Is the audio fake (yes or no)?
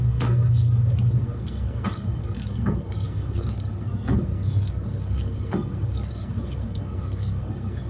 yes